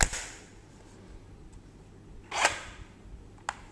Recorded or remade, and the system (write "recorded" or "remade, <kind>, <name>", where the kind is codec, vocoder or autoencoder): recorded